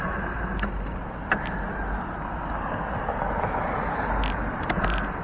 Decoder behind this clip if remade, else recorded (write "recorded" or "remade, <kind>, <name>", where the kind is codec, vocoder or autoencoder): recorded